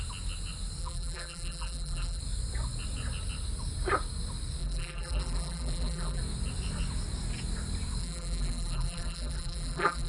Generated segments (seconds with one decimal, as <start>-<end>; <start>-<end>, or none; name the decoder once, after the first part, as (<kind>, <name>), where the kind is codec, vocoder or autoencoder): 0.8-2.2 (vocoder, BigVGAN v2); 4.6-6.2; 8.0-10.1